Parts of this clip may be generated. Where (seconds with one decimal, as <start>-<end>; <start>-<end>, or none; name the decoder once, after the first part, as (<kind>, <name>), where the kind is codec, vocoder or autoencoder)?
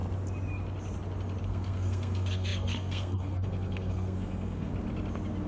1.4-4.7 (codec, SNAC)